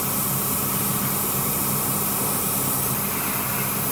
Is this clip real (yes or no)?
yes